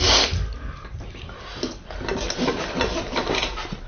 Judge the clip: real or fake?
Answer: real